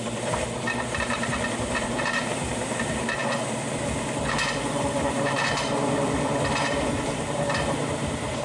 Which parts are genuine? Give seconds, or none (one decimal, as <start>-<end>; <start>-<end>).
3.2-4.6